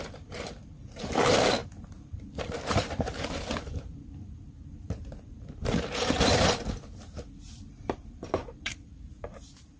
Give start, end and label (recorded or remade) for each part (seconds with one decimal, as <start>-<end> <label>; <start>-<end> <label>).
0.0-1.6 remade; 1.6-2.2 recorded; 2.2-9.8 remade